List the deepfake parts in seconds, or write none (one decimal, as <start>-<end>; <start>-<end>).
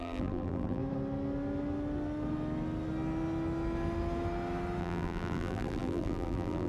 0.0-0.8; 4.8-6.7